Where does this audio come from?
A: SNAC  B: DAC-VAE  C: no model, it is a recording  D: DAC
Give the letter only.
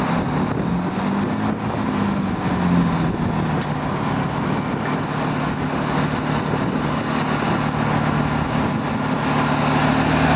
C